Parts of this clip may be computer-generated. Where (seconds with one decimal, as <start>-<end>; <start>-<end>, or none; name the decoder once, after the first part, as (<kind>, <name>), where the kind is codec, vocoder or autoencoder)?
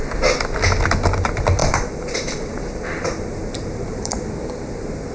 1.6-4.3 (vocoder, BigVGAN v2)